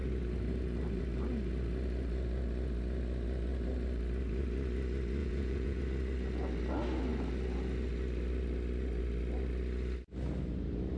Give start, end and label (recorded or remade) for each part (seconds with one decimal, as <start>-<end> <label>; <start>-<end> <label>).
0.0-5.2 recorded; 5.2-5.8 remade; 5.8-11.0 recorded